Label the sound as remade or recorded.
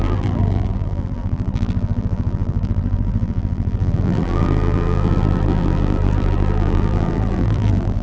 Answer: remade